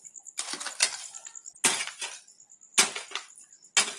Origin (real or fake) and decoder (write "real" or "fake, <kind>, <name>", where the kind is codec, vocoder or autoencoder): real